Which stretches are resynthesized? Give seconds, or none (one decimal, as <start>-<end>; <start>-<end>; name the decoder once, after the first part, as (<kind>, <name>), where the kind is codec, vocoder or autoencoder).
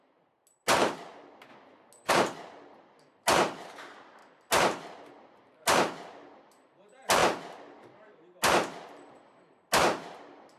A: none